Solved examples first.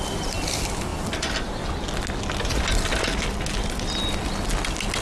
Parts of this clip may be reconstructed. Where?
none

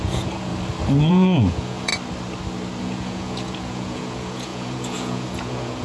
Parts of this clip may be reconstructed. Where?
0.0-0.5 (vocoder, Vocos); 1.1-1.9; 2.8-5.8

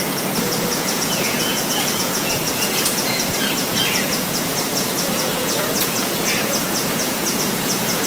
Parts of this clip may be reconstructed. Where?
0.0-8.1 (vocoder, Vocos)

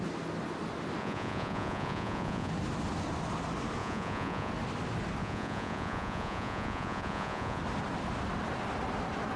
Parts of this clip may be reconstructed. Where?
1.0-2.5 (vocoder, Vocos); 3.8-4.5; 5.2-7.6

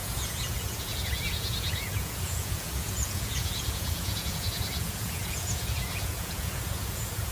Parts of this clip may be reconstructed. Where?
0.0-7.3 (vocoder, Vocos)

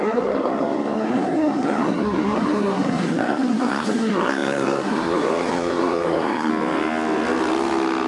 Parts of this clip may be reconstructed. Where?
0.0-6.5 (codec, SNAC)

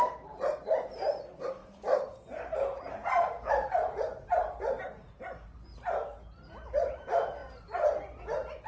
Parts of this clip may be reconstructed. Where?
0.0-5.7 (vocoder, BigVGAN v2); 6.2-8.7